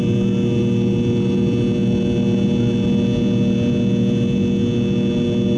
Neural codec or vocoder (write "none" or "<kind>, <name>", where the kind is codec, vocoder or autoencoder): none